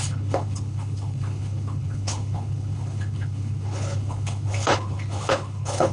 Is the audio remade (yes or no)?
yes